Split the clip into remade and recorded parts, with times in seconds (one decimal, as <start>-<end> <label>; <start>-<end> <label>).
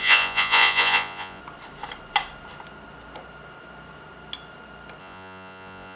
0.0-1.4 remade; 1.4-5.0 recorded; 5.0-6.0 remade